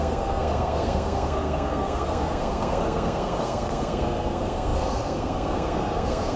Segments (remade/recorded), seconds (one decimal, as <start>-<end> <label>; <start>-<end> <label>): 0.0-6.4 remade